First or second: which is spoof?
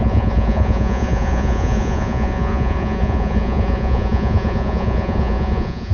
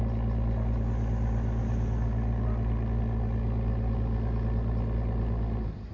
first